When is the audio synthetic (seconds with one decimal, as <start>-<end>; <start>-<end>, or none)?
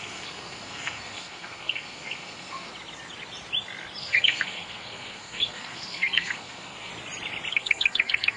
0.0-2.7; 4.0-6.9; 7.5-8.4